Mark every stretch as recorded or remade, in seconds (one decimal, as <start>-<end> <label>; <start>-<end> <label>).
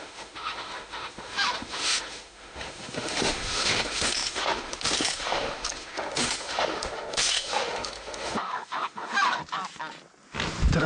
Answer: 0.0-9.4 remade; 9.4-10.9 recorded